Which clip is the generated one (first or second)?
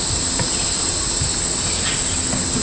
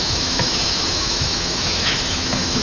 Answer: second